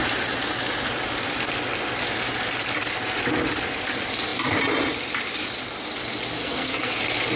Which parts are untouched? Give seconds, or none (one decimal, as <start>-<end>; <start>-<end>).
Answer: 0.0-6.4; 7.0-7.4